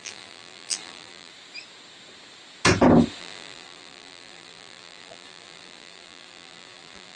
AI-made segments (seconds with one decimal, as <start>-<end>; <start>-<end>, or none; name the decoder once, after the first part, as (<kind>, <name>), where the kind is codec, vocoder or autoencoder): 0.0-1.3 (vocoder, BigVGAN v2); 3.2-7.2